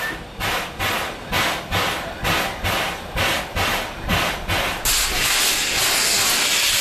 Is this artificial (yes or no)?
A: no